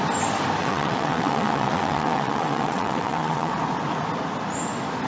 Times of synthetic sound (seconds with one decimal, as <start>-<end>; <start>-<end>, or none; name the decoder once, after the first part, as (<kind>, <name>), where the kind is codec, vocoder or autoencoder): 0.6-3.5 (vocoder, WaveNeXt)